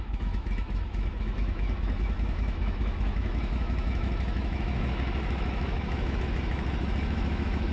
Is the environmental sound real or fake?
fake